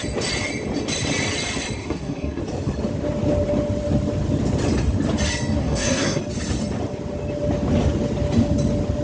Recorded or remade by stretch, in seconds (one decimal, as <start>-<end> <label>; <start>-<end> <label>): 0.0-1.8 recorded; 1.8-2.4 remade; 2.4-5.6 recorded; 5.6-6.2 remade; 6.2-9.0 recorded